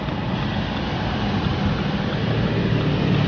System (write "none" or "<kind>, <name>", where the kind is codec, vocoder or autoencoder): none